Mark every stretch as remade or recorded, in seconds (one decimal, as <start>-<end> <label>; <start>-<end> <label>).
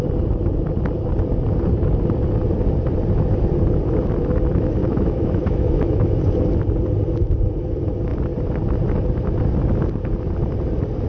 0.0-4.8 recorded; 4.8-6.2 remade; 6.2-11.1 recorded